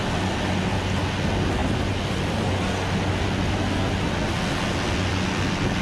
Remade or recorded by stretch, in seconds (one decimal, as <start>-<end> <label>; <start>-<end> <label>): 0.0-5.8 recorded